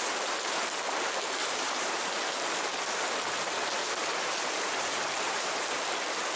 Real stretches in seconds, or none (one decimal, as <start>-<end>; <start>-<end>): 0.0-1.4; 2.1-3.8; 5.7-6.4